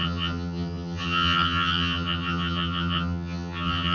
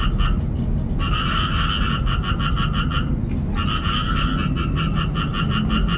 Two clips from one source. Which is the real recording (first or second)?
second